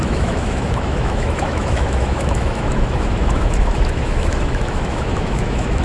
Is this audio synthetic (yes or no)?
yes